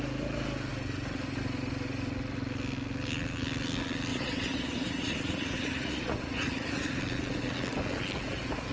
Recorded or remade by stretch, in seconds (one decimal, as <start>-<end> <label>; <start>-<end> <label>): 0.0-4.1 recorded; 4.1-7.0 remade; 7.0-8.7 recorded